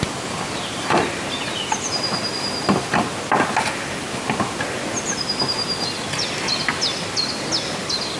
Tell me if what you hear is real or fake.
real